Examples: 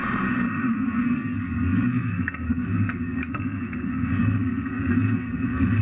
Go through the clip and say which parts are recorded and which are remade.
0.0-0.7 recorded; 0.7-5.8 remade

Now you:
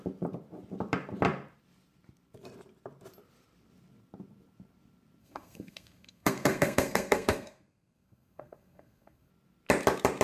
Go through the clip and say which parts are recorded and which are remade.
0.0-5.2 recorded; 5.2-9.3 remade; 9.3-10.2 recorded

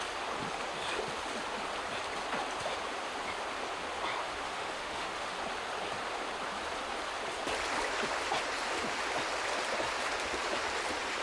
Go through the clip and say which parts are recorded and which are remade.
0.0-4.4 recorded; 4.4-5.3 remade; 5.3-11.2 recorded

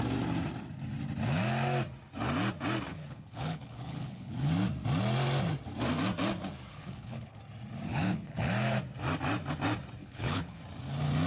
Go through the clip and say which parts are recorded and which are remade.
0.0-2.9 recorded; 2.9-4.5 remade; 4.5-6.7 recorded; 6.7-7.4 remade; 7.4-7.9 recorded; 7.9-8.5 remade; 8.5-10.0 recorded; 10.0-10.6 remade; 10.6-11.3 recorded

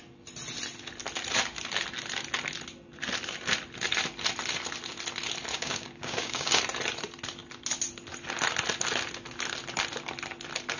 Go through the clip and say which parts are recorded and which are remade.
0.0-5.5 recorded; 5.5-6.6 remade; 6.6-10.8 recorded